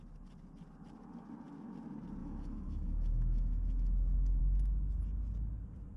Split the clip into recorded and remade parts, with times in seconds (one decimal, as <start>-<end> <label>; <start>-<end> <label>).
0.0-2.2 recorded; 2.2-4.4 remade; 4.4-6.0 recorded